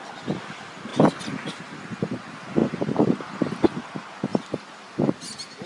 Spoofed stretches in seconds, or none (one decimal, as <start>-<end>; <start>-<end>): 2.6-3.2